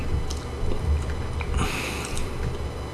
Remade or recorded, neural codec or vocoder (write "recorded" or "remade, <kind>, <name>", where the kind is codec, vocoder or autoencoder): recorded